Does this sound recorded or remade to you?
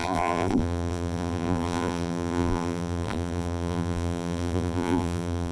remade